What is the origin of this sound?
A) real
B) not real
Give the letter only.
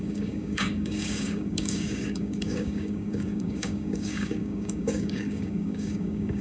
B